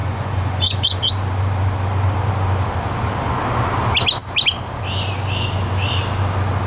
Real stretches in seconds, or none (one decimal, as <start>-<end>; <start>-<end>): 1.1-6.7